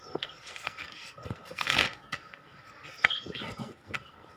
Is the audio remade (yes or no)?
yes